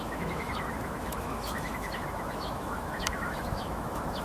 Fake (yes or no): yes